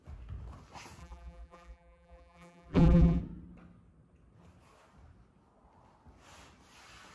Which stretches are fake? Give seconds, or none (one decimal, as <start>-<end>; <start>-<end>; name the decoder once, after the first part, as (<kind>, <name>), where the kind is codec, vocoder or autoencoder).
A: 1.0-3.2 (vocoder, BigVGAN v2)